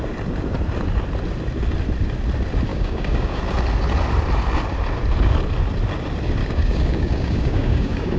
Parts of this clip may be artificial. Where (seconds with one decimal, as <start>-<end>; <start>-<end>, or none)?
2.7-3.4; 6.4-8.2